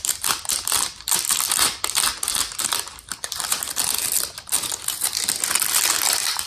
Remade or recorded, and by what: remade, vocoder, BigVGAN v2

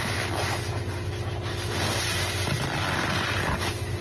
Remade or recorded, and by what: recorded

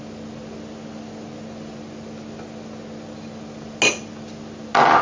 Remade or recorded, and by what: recorded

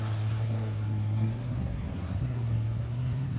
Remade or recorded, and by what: remade, codec, SNAC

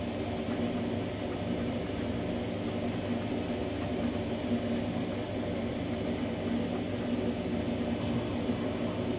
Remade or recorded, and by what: recorded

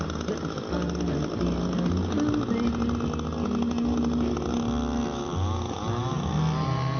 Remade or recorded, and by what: recorded